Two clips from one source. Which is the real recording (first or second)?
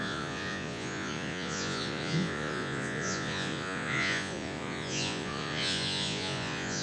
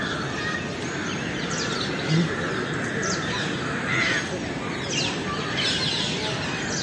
second